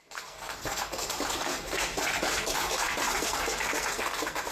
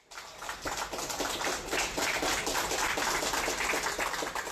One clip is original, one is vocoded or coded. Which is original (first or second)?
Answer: second